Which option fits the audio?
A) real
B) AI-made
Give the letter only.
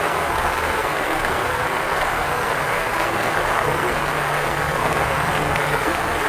B